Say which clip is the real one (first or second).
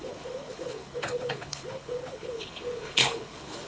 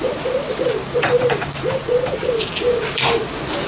second